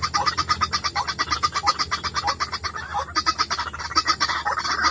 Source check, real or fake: real